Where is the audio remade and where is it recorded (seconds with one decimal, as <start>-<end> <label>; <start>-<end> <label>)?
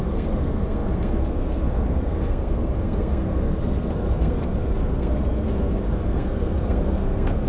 0.0-7.5 remade